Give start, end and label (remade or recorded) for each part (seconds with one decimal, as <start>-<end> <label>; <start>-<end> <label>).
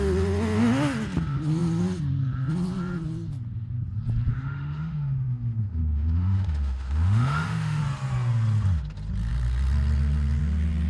0.0-4.3 recorded; 4.3-7.8 remade; 7.8-10.9 recorded